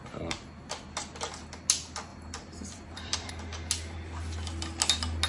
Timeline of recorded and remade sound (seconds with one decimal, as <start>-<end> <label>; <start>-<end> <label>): 0.0-2.1 recorded; 2.1-3.3 remade; 3.3-5.3 recorded